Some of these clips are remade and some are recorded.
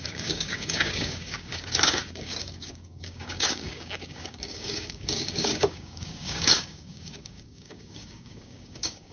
remade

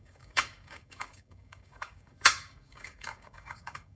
remade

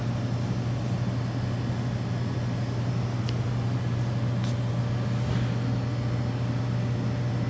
recorded